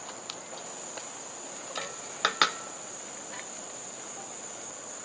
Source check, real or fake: real